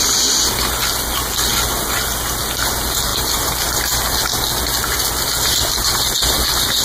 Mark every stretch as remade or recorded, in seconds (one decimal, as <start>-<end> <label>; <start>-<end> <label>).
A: 0.0-6.8 recorded